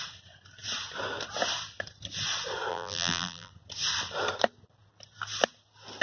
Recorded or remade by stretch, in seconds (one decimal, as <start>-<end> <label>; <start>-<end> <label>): 0.0-2.7 recorded; 2.7-3.5 remade; 3.5-6.0 recorded